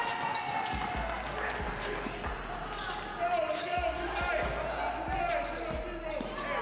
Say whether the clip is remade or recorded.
recorded